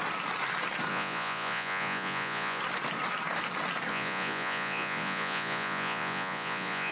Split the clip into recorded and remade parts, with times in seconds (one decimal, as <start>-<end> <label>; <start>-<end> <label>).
0.0-0.9 recorded; 0.9-2.6 remade; 2.6-3.9 recorded; 3.9-6.9 remade